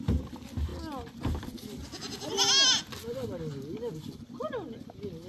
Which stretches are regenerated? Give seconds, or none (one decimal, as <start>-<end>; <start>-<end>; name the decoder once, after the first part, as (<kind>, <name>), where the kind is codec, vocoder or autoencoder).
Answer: none